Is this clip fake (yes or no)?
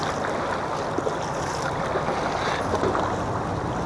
no